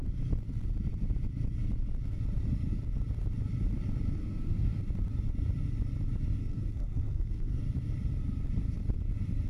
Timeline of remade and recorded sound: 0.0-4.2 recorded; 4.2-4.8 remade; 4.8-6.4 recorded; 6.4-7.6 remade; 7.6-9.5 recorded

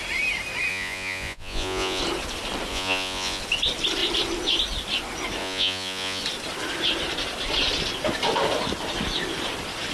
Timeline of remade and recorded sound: 0.0-0.7 recorded; 0.7-2.0 remade; 2.0-2.7 recorded; 2.7-3.4 remade; 3.4-5.4 recorded; 5.4-6.2 remade; 6.2-9.9 recorded

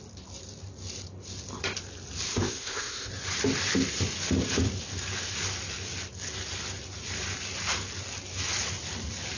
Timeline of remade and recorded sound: 0.0-2.3 recorded; 2.3-3.1 remade; 3.1-9.4 recorded

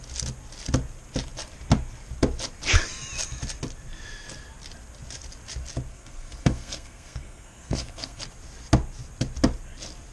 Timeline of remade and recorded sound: 0.0-5.9 recorded; 5.9-8.2 remade; 8.2-10.1 recorded